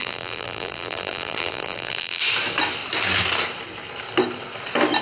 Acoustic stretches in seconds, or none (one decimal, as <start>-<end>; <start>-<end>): 2.2-5.0